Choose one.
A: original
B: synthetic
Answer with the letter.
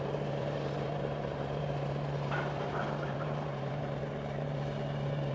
B